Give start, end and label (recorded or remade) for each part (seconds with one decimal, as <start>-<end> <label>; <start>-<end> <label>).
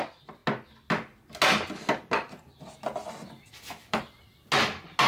0.0-5.1 recorded